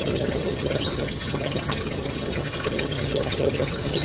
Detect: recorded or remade remade